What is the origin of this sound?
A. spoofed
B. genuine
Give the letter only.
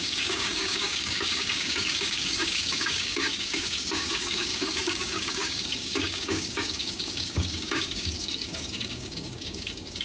A